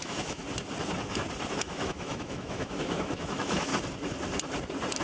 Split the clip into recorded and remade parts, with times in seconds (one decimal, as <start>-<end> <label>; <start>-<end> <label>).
0.0-0.4 remade; 0.4-1.6 recorded; 1.6-3.7 remade; 3.7-5.0 recorded